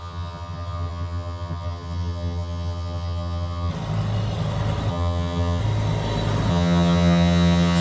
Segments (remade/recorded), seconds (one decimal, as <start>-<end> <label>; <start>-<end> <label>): 0.0-3.7 remade; 3.7-4.9 recorded; 4.9-5.6 remade; 5.6-6.5 recorded; 6.5-7.8 remade